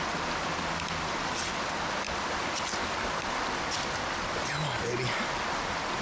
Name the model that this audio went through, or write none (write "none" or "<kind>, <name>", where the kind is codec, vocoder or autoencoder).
none